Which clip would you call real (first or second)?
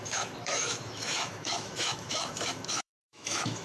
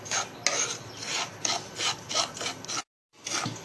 second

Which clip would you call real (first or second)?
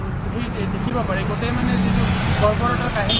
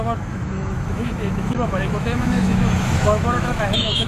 first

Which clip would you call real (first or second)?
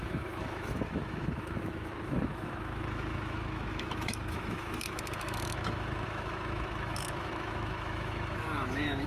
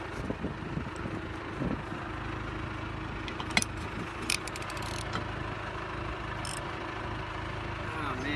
second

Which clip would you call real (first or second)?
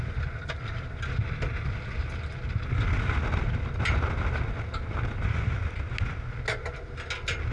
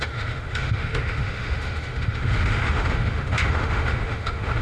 first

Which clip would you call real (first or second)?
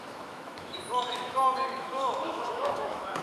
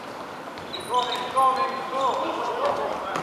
second